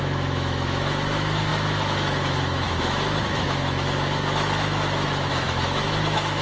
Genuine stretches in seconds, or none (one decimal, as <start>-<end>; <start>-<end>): none